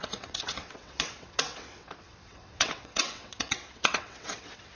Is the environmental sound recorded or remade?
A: remade